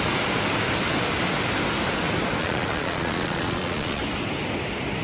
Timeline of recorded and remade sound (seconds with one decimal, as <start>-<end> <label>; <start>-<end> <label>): 0.0-2.4 recorded; 2.4-4.0 remade; 4.0-5.0 recorded